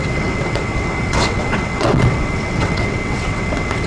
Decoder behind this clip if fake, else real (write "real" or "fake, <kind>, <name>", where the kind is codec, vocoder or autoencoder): fake, vocoder, WaveNeXt